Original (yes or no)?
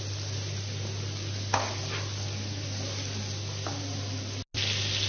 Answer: yes